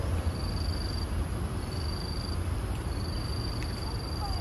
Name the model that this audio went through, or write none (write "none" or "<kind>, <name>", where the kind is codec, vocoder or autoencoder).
none